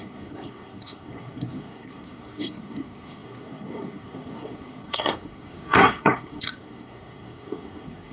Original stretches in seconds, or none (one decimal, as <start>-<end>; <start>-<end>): none